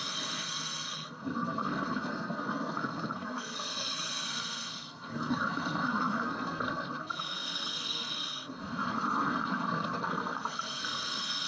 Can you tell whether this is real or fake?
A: fake